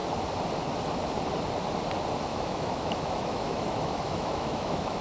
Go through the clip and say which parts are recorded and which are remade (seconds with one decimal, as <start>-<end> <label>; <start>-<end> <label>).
0.0-2.3 recorded; 2.3-5.0 remade